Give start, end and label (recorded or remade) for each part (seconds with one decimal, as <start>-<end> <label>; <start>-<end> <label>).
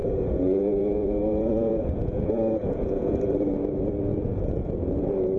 0.0-3.2 remade; 3.2-4.1 recorded; 4.1-4.7 remade; 4.7-5.4 recorded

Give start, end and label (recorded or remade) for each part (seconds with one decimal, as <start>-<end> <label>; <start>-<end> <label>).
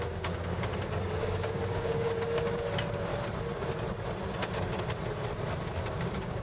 0.0-3.1 remade; 3.1-5.8 recorded; 5.8-6.4 remade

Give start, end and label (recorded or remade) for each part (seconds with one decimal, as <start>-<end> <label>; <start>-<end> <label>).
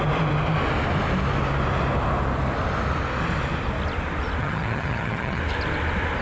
0.0-4.4 recorded; 4.4-5.4 remade; 5.4-6.2 recorded